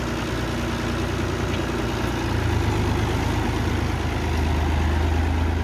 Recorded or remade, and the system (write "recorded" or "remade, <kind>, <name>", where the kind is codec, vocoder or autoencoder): recorded